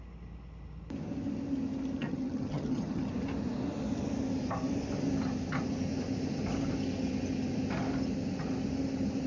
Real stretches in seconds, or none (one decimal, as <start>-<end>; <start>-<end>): 0.0-2.0; 3.1-9.3